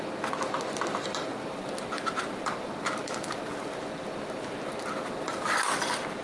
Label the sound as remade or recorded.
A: recorded